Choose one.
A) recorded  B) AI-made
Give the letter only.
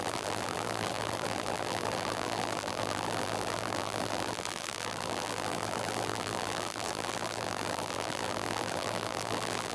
B